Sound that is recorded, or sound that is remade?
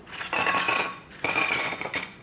remade